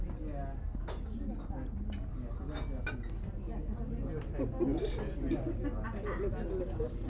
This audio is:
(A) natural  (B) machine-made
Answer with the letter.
A